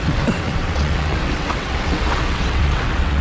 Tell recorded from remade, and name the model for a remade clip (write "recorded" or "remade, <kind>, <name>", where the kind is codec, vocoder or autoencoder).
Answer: remade, vocoder, WaveNeXt